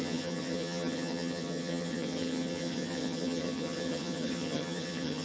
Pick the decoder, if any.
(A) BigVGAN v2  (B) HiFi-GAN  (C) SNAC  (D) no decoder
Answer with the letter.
B